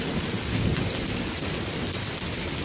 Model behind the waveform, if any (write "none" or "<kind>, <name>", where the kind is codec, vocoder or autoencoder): none